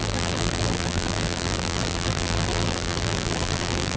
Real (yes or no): no